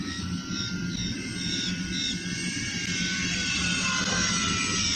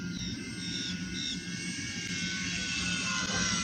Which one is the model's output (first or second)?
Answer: first